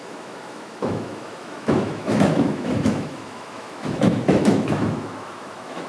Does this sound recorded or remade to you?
remade